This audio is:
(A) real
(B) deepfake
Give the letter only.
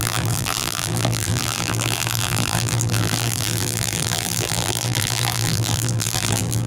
B